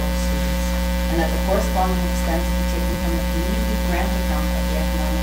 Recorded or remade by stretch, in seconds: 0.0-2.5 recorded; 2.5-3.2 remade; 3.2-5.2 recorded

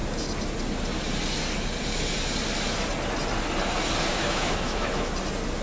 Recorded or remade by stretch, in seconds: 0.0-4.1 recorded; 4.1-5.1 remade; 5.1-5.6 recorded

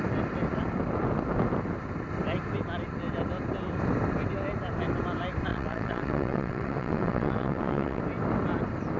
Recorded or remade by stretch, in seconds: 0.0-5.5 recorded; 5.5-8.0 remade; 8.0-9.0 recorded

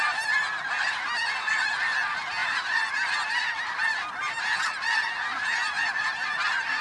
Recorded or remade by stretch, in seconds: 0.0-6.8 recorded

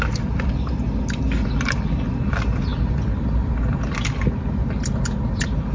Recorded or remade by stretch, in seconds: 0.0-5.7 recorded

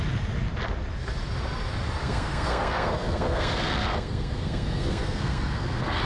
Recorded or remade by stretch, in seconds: 0.0-2.0 recorded; 2.0-6.1 remade

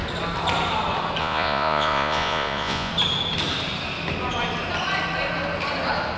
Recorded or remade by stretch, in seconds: 0.0-1.2 recorded; 1.2-2.9 remade; 2.9-6.2 recorded